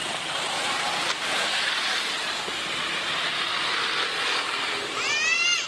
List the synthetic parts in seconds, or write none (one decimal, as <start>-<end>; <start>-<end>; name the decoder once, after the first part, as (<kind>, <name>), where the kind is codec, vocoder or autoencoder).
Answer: 0.0-2.4 (vocoder, BigVGAN v2); 3.5-4.7